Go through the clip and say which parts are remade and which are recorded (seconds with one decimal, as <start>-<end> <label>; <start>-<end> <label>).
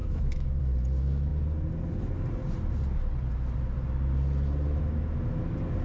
0.0-0.6 remade; 0.6-5.8 recorded